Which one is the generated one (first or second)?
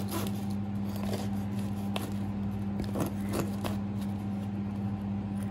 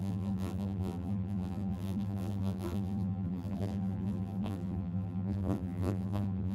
second